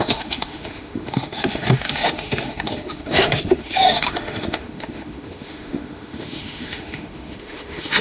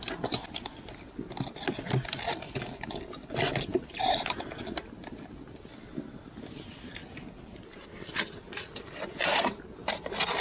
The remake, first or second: first